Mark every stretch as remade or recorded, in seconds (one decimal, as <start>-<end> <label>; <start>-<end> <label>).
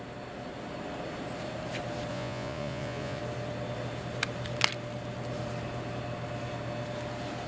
0.0-2.1 recorded; 2.1-3.2 remade; 3.2-7.5 recorded